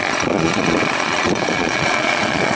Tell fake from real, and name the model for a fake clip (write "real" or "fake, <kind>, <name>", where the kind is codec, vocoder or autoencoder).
fake, vocoder, Vocos